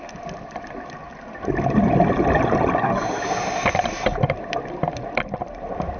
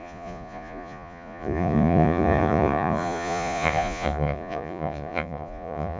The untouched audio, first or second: first